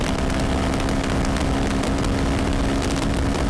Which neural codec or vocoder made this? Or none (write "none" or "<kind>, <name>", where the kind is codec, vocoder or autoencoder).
none